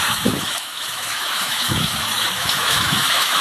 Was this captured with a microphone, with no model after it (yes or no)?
no